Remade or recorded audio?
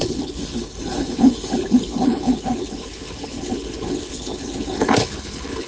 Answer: remade